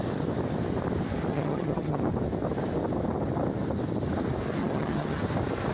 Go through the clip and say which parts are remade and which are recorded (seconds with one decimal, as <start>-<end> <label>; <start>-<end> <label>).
0.0-1.3 recorded; 1.3-2.0 remade; 2.0-4.6 recorded; 4.6-5.2 remade; 5.2-5.7 recorded